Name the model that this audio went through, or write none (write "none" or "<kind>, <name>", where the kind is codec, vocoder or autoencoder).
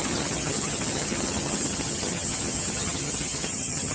vocoder, HiFi-GAN